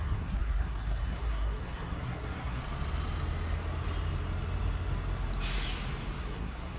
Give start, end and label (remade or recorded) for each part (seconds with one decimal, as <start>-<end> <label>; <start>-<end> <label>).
0.0-2.6 remade; 2.6-6.2 recorded; 6.2-6.8 remade